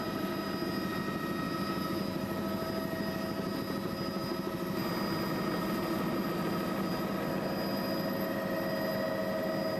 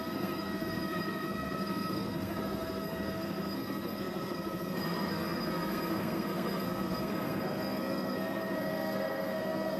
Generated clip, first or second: second